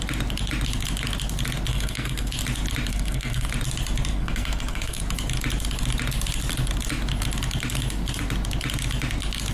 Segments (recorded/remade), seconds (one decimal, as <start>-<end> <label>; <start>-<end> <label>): 0.0-1.7 recorded; 1.7-2.3 remade; 2.3-2.9 recorded; 2.9-3.5 remade; 3.5-4.1 recorded; 4.1-5.0 remade; 5.0-9.5 recorded